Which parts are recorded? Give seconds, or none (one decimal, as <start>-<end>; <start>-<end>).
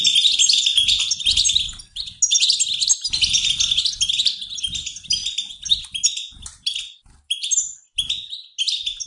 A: 0.0-9.1